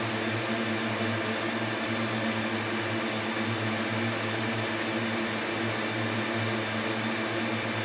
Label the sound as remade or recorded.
recorded